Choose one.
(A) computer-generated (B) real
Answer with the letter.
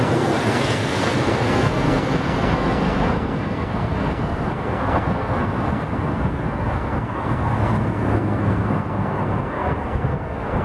A